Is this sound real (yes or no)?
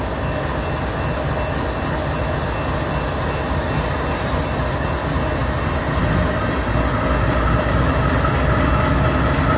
yes